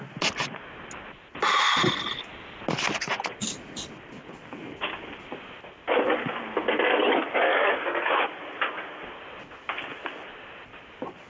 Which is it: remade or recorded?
recorded